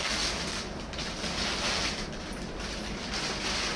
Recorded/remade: recorded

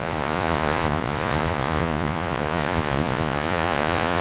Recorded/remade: remade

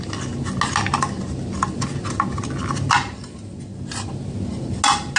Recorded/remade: recorded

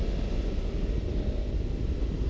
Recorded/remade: recorded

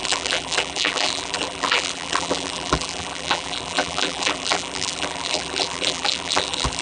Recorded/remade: remade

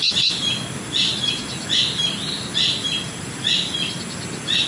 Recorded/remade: recorded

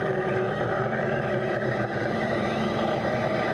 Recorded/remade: remade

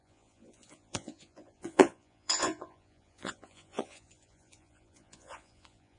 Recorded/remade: remade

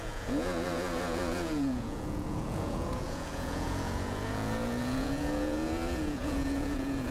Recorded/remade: remade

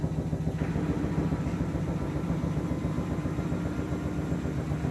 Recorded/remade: recorded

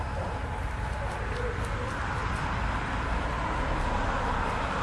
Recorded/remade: recorded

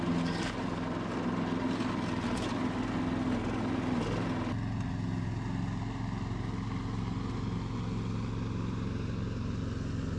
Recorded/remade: recorded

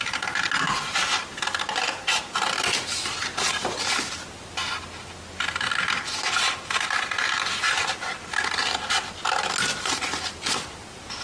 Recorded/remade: recorded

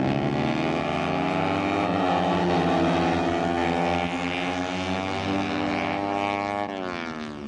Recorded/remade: recorded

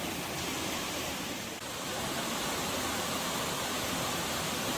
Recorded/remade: remade